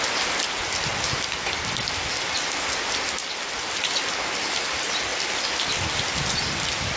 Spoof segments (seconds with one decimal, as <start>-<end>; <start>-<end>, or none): none